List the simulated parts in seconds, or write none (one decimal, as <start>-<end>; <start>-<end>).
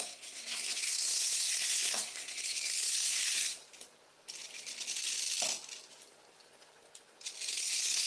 0.0-3.6; 7.5-8.1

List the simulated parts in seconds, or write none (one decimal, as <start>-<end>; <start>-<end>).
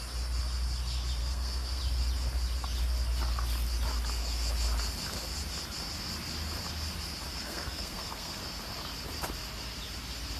1.2-1.8; 7.3-8.4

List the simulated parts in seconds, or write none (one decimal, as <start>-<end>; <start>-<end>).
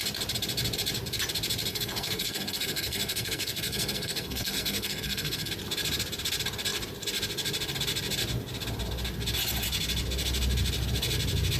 1.7-5.5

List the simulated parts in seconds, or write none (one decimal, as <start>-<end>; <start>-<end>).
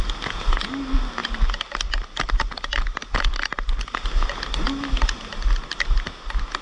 none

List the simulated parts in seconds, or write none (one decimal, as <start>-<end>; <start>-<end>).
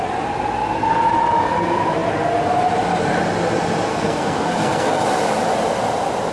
3.9-5.0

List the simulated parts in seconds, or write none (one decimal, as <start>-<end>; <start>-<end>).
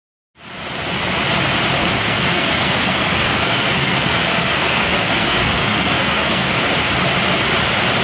1.8-6.6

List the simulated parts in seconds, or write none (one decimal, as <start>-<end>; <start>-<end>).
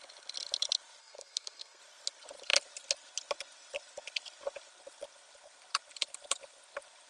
1.0-1.8